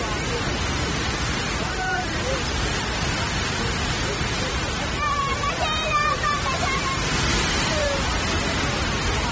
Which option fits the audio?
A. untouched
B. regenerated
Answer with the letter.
A